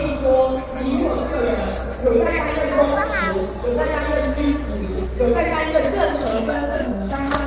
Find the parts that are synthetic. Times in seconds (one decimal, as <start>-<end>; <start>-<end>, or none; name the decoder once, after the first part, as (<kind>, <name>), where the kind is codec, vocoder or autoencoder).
6.3-7.5 (codec, SNAC)